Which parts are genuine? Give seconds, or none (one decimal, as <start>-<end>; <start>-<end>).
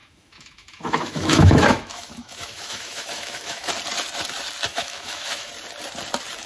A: 3.7-4.7; 5.5-6.5